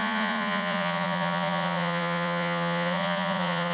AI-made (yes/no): yes